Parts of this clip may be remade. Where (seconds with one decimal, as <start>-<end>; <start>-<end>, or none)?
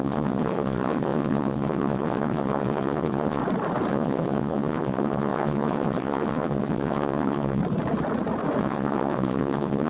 0.0-3.4; 3.9-7.6; 8.6-9.9